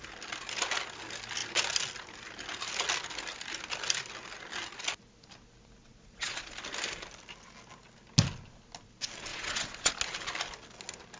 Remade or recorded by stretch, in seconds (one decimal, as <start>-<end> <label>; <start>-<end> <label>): 0.0-5.8 recorded; 5.8-6.5 remade; 6.5-9.3 recorded; 9.3-9.9 remade; 9.9-11.2 recorded